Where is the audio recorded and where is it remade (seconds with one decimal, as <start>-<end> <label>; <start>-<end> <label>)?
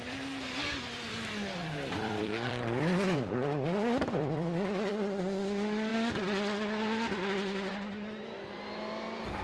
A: 0.0-1.6 recorded; 1.6-4.9 remade; 4.9-5.9 recorded; 5.9-7.7 remade; 7.7-9.4 recorded